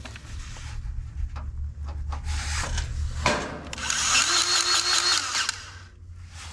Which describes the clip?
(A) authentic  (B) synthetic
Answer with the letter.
A